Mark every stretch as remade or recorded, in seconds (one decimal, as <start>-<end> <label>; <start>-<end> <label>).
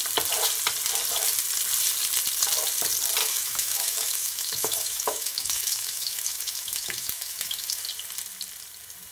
0.0-3.2 recorded; 3.2-7.8 remade; 7.8-9.1 recorded